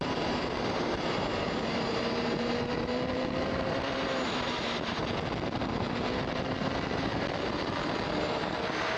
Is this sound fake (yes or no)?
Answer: yes